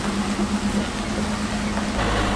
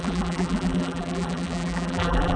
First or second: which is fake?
second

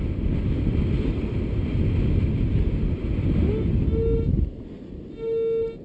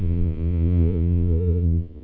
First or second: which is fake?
second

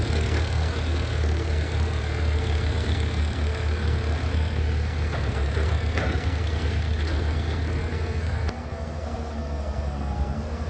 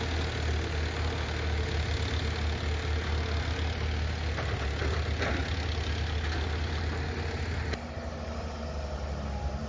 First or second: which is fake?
first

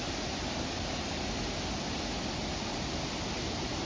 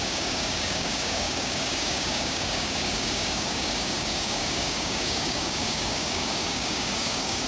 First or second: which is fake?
second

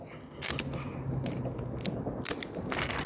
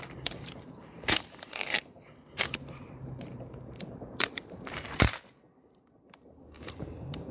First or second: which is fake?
second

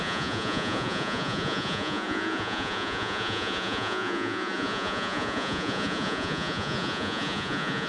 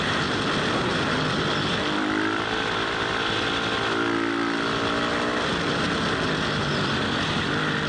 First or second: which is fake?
first